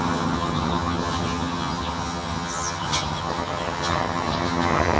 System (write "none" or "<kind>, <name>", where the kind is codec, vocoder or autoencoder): vocoder, HiFi-GAN